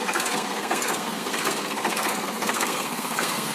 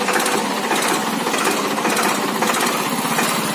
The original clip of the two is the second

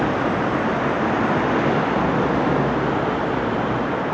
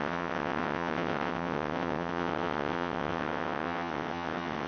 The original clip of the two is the first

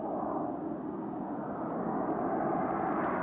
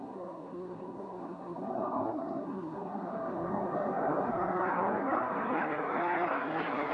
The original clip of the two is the first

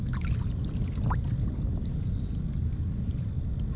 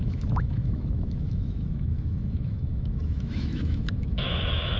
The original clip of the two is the first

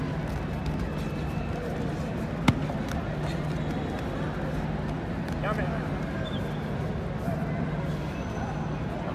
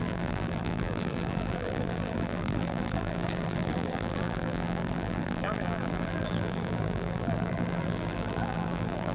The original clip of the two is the first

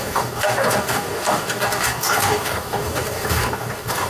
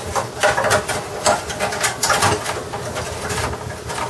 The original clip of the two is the second